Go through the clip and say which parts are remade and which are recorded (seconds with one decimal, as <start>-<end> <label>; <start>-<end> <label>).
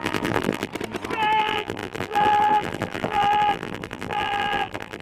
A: 0.0-0.7 remade; 0.7-1.4 recorded; 1.4-5.0 remade